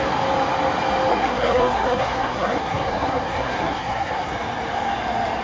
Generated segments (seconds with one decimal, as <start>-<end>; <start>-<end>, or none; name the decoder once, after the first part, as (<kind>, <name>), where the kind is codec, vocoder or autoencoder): 1.1-4.3 (codec, SNAC)